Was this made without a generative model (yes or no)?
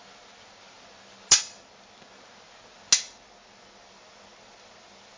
yes